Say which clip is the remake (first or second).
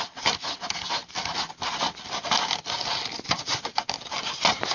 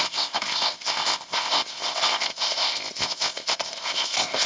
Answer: second